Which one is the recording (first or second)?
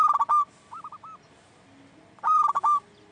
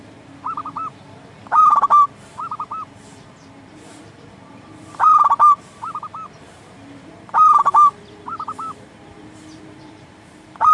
first